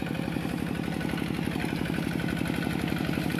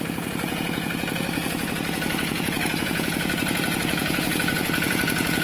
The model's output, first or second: second